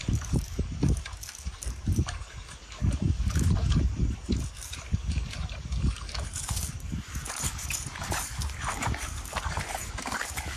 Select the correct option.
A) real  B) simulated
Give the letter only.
B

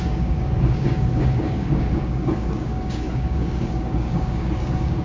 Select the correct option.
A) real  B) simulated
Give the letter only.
B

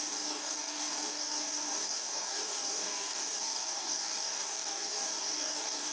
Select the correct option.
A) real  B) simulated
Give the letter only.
B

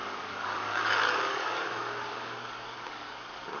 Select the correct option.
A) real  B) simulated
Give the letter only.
B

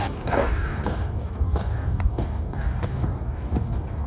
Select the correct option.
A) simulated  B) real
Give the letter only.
A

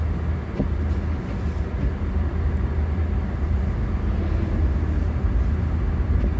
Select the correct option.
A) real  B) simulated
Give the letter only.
A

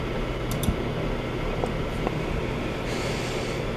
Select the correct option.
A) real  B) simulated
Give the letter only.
A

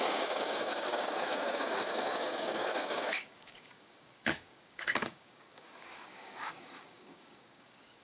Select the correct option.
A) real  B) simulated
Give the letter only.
B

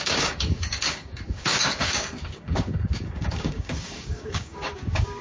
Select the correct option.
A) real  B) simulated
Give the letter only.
B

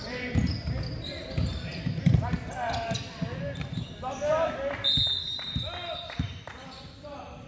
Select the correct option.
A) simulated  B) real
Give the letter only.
B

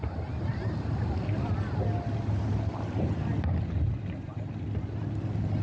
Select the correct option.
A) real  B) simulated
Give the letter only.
A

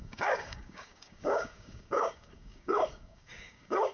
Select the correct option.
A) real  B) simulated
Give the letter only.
B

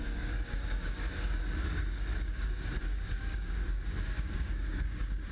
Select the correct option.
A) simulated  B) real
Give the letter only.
A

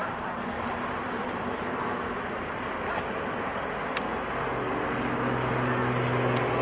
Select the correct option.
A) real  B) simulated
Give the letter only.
A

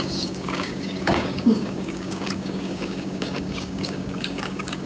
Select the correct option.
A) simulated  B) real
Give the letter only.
A